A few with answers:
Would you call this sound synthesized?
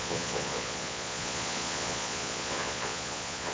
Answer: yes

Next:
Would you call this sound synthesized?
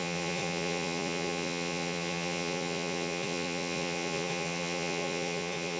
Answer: yes